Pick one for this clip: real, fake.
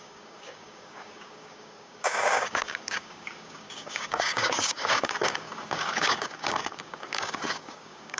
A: fake